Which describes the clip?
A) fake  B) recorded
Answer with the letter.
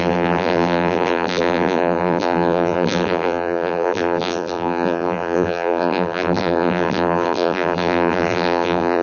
A